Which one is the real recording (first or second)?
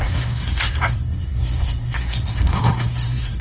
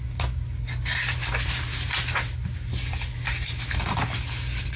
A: second